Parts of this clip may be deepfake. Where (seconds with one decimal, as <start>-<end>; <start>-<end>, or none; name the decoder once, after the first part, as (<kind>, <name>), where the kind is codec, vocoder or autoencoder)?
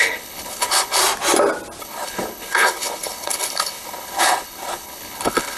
0.0-1.0 (codec, HILCodec); 1.8-5.6